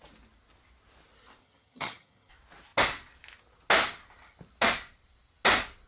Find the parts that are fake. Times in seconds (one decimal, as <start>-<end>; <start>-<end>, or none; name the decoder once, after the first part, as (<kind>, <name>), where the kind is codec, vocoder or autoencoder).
1.4-2.3 (vocoder, HiFi-GAN)